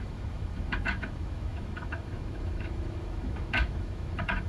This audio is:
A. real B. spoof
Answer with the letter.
B